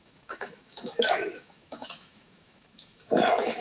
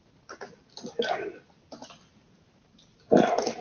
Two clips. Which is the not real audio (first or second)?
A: first